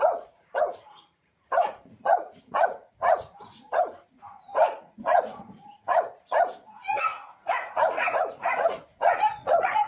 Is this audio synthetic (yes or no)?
yes